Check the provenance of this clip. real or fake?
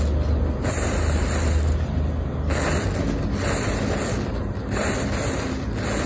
real